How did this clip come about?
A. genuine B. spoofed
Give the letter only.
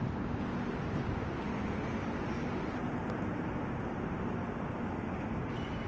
A